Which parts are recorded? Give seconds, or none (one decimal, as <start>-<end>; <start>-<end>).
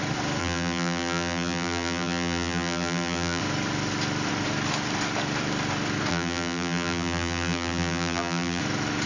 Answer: 0.0-0.4; 3.4-6.1; 8.6-9.1